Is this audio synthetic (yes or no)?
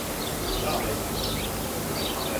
no